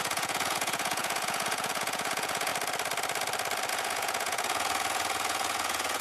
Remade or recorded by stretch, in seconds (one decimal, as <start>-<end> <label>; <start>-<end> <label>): 0.0-2.5 remade; 2.5-3.7 recorded; 3.7-6.0 remade